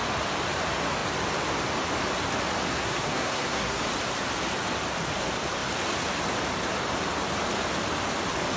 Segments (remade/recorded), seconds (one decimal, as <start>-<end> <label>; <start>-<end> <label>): 0.0-2.7 recorded; 2.7-3.8 remade; 3.8-8.6 recorded

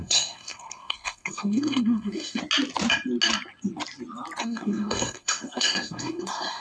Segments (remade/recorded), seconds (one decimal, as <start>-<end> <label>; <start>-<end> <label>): 0.0-2.4 remade; 2.4-4.4 recorded; 4.4-6.6 remade

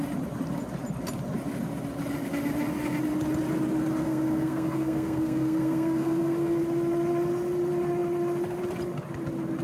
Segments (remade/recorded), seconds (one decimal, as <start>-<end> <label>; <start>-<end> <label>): 0.0-4.0 recorded; 4.0-6.6 remade; 6.6-9.6 recorded

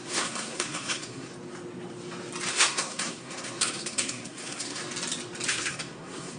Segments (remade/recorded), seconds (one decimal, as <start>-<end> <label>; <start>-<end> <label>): 0.0-1.3 remade; 1.3-2.5 recorded; 2.5-4.8 remade; 4.8-5.5 recorded; 5.5-6.4 remade

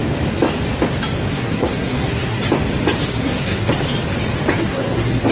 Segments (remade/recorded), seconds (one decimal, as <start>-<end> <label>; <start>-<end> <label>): 0.0-1.3 recorded; 1.3-2.4 remade; 2.4-3.1 recorded; 3.1-3.7 remade; 3.7-4.6 recorded; 4.6-5.3 remade

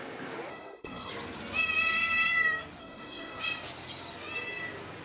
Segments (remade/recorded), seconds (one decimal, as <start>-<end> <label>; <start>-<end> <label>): 0.0-0.5 recorded; 0.5-1.1 remade; 1.1-2.8 recorded; 2.8-3.4 remade; 3.4-5.0 recorded